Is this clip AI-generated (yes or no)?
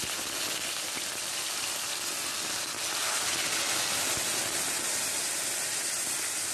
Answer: no